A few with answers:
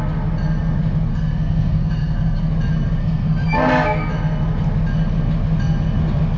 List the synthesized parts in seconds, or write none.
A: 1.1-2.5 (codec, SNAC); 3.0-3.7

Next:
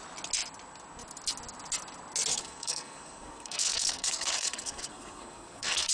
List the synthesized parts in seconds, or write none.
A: 2.3-5.9 (codec, SNAC)

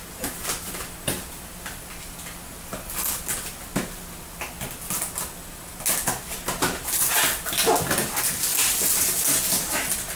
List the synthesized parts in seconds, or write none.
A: none

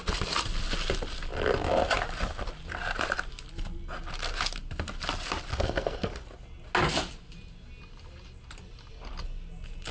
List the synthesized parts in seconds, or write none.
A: 5.5-6.1 (codec, SNAC)

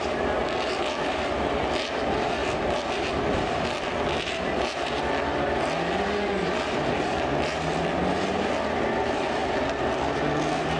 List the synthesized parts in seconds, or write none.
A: none

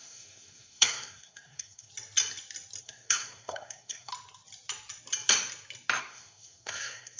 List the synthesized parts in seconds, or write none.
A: 0.0-1.9 (codec, SNAC); 2.8-4.1; 6.0-7.2

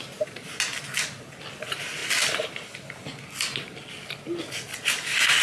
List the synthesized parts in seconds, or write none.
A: none